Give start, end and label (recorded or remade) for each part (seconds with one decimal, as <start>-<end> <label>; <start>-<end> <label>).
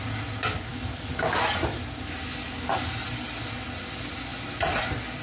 0.0-5.2 recorded